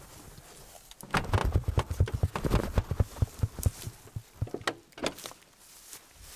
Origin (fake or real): real